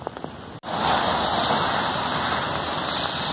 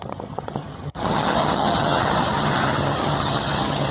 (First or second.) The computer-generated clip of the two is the second